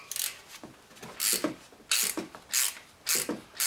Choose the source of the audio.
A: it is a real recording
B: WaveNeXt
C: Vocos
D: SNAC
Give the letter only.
A